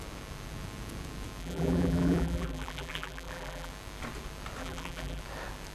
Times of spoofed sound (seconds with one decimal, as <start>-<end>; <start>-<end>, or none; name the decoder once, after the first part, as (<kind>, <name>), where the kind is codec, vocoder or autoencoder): 1.4-3.7 (vocoder, BigVGAN v2); 4.6-5.2